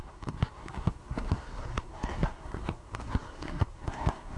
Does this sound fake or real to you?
fake